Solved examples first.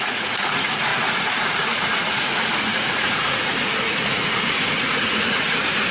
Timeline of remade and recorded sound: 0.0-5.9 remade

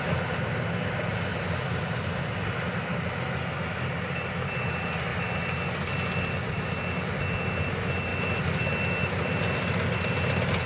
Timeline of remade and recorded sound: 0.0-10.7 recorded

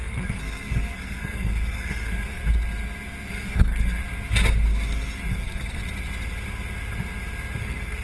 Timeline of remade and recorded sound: 0.0-2.4 remade; 2.4-3.3 recorded; 3.3-4.0 remade; 4.0-5.3 recorded; 5.3-5.8 remade; 5.8-7.6 recorded; 7.6-8.0 remade